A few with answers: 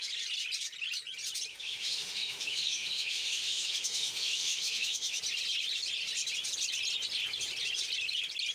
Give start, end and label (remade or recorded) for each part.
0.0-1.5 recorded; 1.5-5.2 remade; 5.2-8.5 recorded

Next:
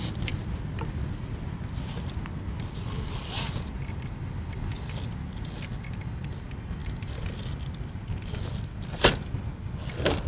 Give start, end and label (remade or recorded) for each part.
0.0-10.3 recorded

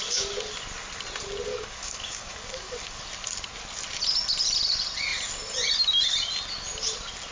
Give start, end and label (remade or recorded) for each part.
0.0-1.5 recorded; 1.5-3.0 remade; 3.0-7.3 recorded

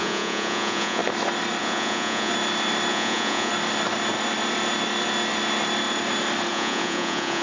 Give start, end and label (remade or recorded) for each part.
0.0-1.0 remade; 1.0-1.6 recorded; 1.6-2.3 remade; 2.3-2.9 recorded; 2.9-3.5 remade; 3.5-6.5 recorded; 6.5-7.4 remade